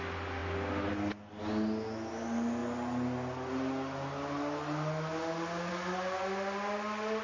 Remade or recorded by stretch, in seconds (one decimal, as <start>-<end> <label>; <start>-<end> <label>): 0.0-7.2 recorded